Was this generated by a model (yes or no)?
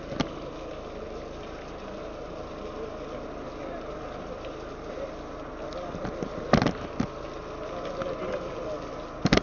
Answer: no